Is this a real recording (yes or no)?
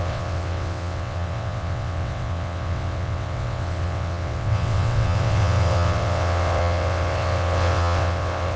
no